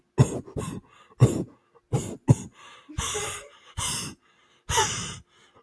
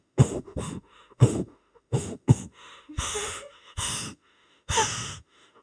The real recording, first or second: first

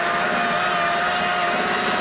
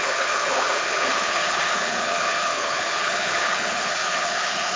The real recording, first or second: first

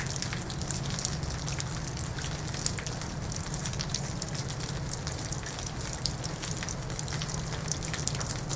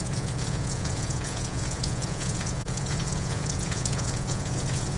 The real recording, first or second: first